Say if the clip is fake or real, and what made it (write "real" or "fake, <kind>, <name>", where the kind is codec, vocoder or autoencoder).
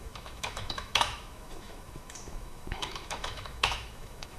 fake, autoencoder, DAC-VAE